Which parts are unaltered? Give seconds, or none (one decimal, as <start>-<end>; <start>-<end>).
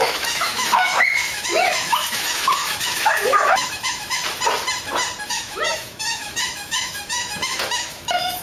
4.2-5.3